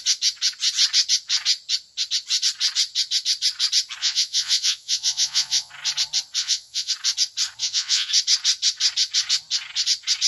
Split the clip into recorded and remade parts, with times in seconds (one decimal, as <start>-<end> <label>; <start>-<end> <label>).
0.0-4.0 recorded; 4.0-5.7 remade; 5.7-6.4 recorded; 6.4-6.9 remade; 6.9-7.6 recorded; 7.6-8.1 remade; 8.1-10.3 recorded